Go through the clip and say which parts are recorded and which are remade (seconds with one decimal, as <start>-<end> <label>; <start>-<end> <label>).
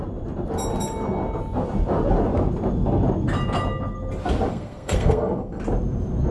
0.0-4.5 recorded; 4.5-5.6 remade; 5.6-6.3 recorded